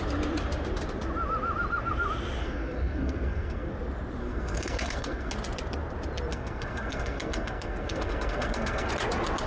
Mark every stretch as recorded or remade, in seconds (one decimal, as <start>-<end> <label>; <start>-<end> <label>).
0.0-2.4 recorded; 2.4-3.7 remade; 3.7-4.2 recorded; 4.2-5.3 remade; 5.3-6.3 recorded; 6.3-8.9 remade; 8.9-9.5 recorded